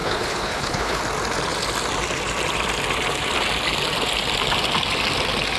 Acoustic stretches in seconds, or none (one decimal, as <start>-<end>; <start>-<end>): 1.0-5.6